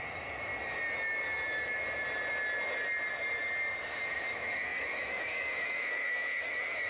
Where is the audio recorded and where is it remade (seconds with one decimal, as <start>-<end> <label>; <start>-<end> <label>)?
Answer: 0.0-0.5 remade; 0.5-3.8 recorded; 3.8-6.9 remade